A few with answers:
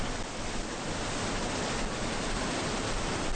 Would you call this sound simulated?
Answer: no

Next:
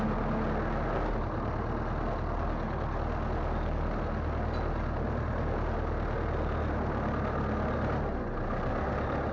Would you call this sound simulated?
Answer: no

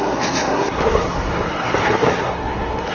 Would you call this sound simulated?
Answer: yes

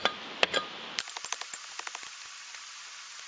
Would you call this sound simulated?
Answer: no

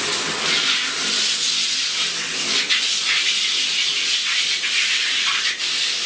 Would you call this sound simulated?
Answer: no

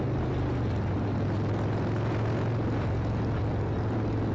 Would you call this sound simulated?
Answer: no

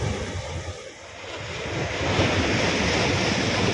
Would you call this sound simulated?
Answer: no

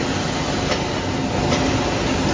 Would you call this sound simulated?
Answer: no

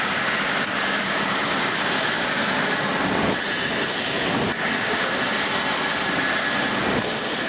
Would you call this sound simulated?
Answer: no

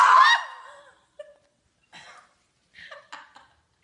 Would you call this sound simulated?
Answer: no